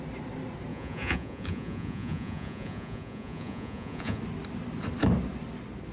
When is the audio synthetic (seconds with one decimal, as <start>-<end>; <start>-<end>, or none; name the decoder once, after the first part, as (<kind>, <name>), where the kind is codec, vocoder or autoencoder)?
0.7-4.2 (vocoder, Vocos)